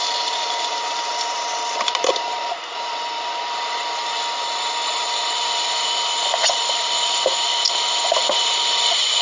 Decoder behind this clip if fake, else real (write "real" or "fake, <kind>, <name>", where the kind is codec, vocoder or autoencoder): fake, vocoder, BigVGAN v2